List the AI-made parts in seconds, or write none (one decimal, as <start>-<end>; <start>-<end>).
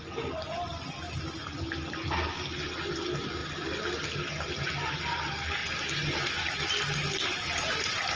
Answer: 3.4-4.8